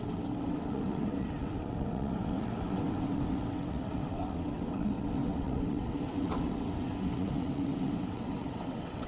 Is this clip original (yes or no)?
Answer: no